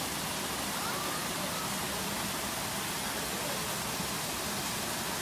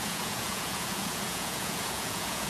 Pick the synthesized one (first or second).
second